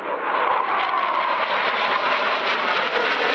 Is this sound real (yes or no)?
yes